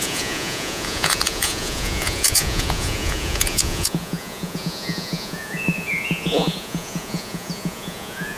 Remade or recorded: remade